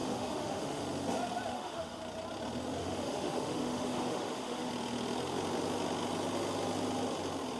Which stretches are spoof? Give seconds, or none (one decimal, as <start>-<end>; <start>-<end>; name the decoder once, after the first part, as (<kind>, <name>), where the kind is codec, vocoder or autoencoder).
0.0-0.8 (autoencoder, DAC-VAE); 1.5-2.0; 2.8-4.7